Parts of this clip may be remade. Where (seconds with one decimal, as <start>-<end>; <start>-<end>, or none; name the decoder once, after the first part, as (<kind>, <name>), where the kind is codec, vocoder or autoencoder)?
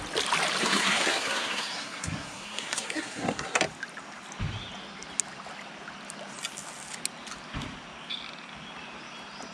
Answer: 0.6-3.6 (codec, SNAC)